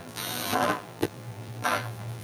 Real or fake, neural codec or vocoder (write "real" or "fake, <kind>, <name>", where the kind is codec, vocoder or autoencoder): fake, vocoder, BigVGAN v2